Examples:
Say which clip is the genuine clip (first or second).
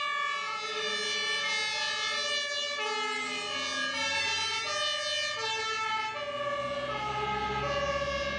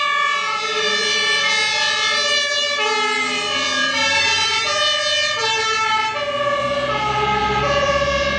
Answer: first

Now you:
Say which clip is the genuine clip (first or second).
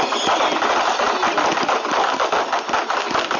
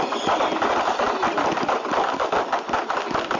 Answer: first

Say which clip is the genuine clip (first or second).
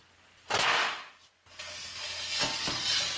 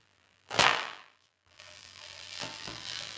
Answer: first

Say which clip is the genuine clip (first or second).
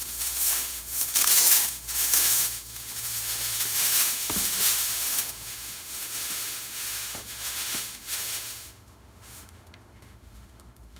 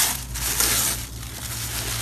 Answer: second